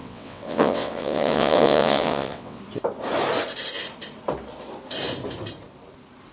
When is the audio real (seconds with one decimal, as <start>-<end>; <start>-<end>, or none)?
2.6-6.3